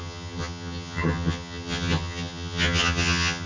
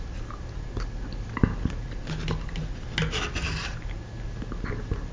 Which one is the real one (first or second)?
second